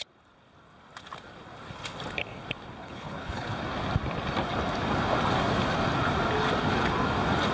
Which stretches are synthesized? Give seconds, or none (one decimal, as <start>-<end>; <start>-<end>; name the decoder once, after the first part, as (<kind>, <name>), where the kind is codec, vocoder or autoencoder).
2.8-3.6 (codec, HILCodec)